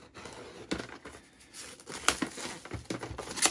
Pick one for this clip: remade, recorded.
recorded